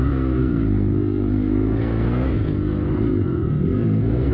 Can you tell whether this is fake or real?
fake